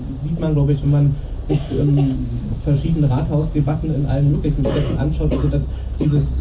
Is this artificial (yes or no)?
no